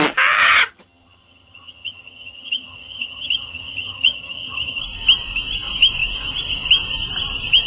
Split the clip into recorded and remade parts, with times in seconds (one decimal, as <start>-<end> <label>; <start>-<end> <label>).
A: 0.0-0.4 recorded; 0.4-4.8 remade; 4.8-7.7 recorded